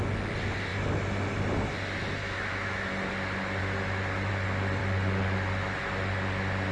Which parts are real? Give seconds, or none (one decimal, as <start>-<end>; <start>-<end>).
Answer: 0.0-2.2; 3.1-3.6; 4.3-6.7